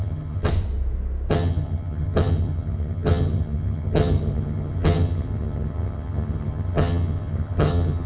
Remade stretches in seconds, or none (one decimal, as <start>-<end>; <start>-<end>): 0.0-0.5; 1.3-8.1